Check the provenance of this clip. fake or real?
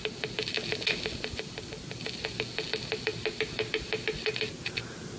real